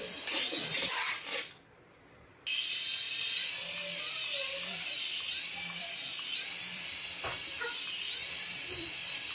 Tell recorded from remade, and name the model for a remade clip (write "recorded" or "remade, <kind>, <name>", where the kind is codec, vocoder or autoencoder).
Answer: remade, vocoder, BigVGAN v2